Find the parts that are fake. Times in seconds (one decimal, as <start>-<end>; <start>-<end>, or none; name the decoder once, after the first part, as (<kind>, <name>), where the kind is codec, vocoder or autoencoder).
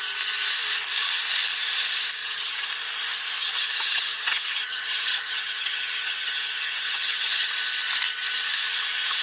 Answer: 2.2-2.7 (vocoder, HiFi-GAN); 3.4-7.5